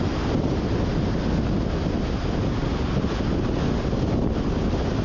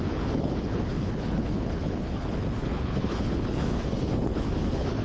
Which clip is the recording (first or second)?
first